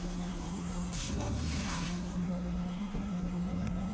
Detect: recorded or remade remade